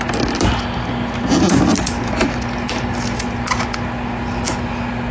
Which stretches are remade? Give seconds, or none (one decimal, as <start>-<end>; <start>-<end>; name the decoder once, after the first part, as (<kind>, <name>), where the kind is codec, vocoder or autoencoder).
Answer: none